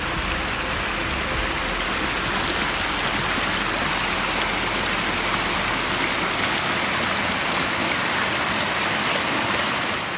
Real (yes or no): yes